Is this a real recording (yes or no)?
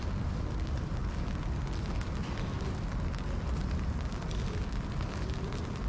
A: yes